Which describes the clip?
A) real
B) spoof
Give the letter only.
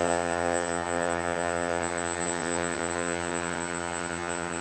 B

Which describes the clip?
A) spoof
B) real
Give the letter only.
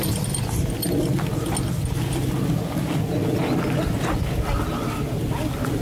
B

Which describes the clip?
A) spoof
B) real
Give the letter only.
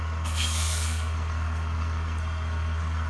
A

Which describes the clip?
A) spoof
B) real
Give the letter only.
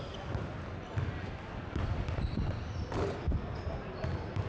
B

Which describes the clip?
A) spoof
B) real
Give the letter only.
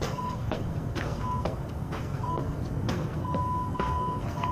A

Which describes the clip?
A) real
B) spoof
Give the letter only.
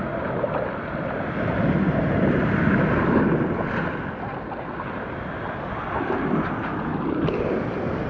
A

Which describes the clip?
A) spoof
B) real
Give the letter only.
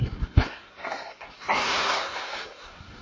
A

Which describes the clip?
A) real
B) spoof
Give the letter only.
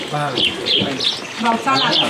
A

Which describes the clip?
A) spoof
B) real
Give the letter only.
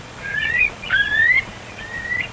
A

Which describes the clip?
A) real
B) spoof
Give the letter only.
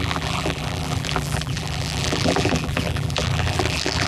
B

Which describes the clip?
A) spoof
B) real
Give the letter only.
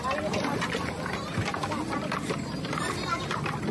B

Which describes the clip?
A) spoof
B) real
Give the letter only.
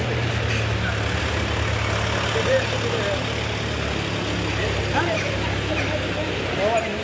B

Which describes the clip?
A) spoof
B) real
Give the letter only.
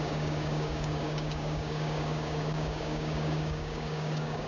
A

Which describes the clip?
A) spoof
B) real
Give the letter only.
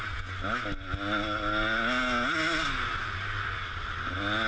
B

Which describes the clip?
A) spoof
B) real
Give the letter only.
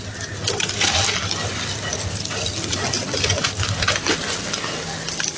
B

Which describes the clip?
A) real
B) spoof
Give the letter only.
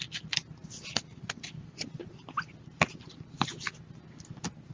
A